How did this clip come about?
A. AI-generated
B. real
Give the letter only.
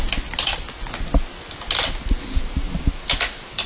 B